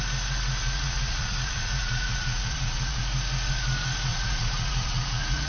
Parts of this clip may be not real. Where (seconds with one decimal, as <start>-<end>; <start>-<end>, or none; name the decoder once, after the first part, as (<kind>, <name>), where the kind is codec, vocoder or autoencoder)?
0.6-3.0 (vocoder, Vocos); 4.1-5.5